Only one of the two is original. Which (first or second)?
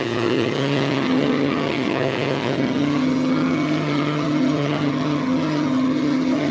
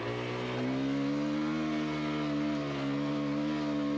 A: second